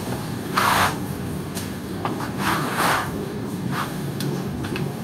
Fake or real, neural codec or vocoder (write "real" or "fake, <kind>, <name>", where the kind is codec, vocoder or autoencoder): fake, codec, DAC